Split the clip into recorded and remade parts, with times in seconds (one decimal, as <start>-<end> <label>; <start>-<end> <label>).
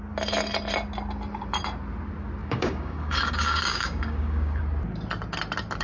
0.0-2.4 recorded; 2.4-4.6 remade; 4.6-5.8 recorded